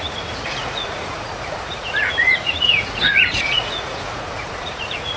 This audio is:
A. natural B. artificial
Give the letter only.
B